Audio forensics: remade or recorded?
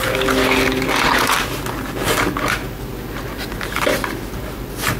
recorded